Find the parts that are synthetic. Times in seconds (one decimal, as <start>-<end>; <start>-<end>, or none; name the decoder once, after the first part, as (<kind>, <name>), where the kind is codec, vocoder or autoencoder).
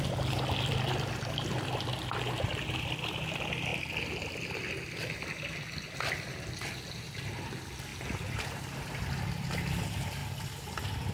0.0-7.9 (vocoder, BigVGAN v2); 8.6-10.2